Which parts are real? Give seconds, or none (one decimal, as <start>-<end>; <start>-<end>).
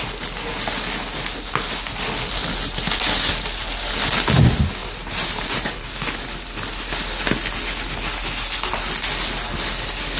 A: 0.0-4.8; 6.1-10.2